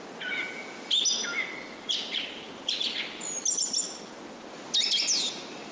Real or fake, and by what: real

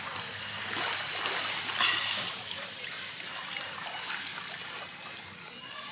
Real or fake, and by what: real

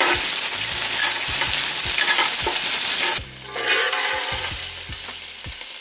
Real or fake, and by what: real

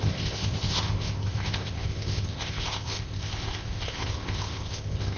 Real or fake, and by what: fake, codec, ZipCodec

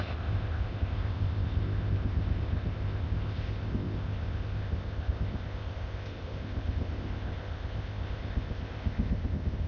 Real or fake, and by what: fake, codec, ZipCodec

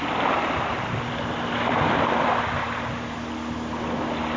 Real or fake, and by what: real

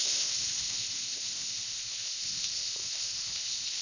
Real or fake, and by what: fake, codec, ZipCodec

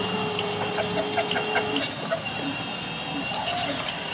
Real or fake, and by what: real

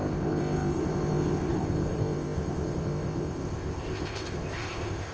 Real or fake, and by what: fake, codec, ZipCodec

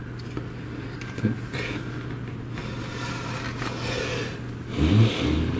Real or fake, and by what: real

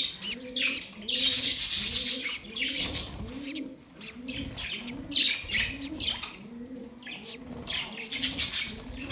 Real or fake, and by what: real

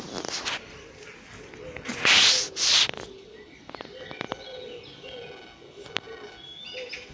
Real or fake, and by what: real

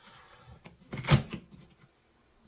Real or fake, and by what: real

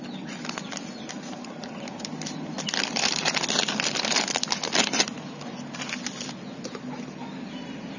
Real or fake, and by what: real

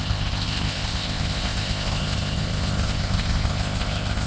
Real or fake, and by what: fake, codec, ZipCodec